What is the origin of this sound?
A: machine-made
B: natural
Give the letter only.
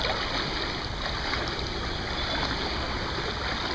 B